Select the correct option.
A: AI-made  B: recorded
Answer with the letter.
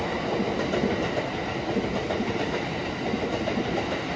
B